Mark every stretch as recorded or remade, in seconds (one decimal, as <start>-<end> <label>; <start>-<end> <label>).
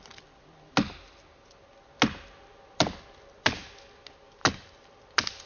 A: 0.0-5.5 recorded